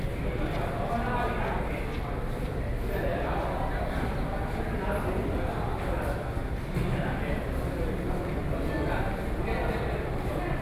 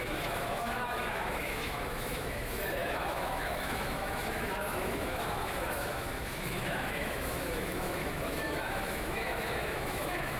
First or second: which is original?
first